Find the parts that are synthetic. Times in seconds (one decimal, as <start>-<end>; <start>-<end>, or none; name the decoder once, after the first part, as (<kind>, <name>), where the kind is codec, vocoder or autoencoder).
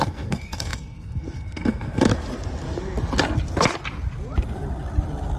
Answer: 0.0-2.1 (codec, SNAC)